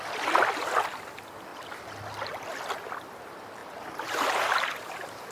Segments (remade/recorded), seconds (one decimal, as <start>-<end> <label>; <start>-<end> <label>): 0.0-3.6 recorded; 3.6-5.3 remade